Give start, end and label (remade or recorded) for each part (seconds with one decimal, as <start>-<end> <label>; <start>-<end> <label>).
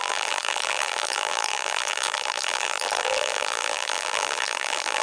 0.0-5.0 remade